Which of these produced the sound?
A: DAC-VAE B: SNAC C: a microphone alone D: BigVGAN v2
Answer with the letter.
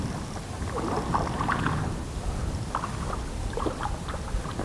C